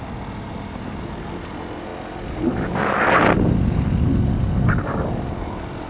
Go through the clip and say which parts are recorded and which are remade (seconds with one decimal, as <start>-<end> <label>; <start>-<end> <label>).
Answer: 0.0-5.9 recorded